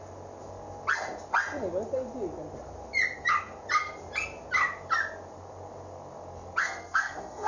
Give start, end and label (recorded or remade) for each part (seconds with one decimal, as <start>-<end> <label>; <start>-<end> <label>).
0.0-6.6 recorded; 6.6-7.5 remade